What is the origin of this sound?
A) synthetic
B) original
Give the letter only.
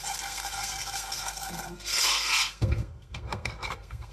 A